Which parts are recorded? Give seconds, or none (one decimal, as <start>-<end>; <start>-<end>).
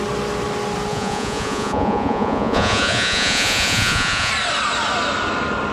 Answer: 0.0-0.9; 4.3-5.7